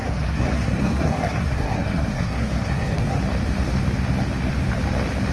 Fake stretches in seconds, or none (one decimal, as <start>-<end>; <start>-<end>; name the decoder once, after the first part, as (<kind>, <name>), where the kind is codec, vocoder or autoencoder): 0.0-3.2 (codec, SNAC)